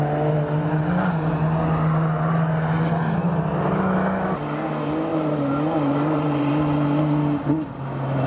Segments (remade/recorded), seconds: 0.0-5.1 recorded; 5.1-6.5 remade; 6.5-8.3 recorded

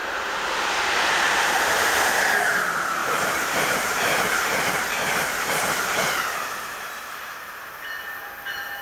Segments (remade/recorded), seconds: 0.0-2.0 remade; 2.0-3.0 recorded; 3.0-8.3 remade; 8.3-8.8 recorded

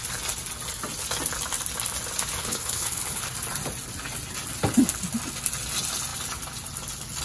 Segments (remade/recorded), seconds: 0.0-2.4 recorded; 2.4-3.3 remade; 3.3-7.2 recorded